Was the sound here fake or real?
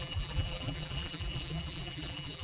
fake